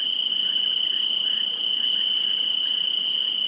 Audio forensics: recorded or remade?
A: recorded